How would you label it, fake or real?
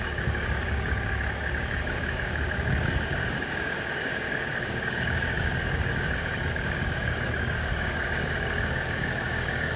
fake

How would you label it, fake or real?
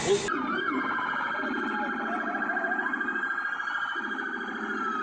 real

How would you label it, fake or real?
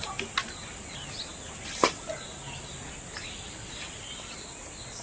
real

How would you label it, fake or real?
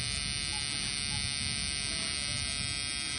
real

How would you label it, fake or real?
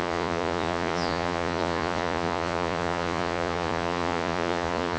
fake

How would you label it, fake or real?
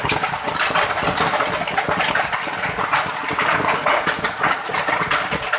real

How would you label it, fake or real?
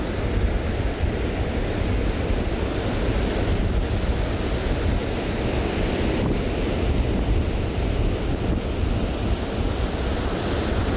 real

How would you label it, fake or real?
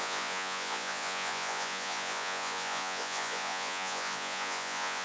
fake